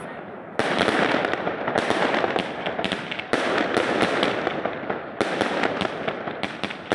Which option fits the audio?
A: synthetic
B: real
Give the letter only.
A